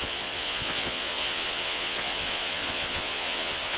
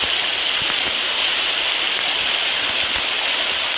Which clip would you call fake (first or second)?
first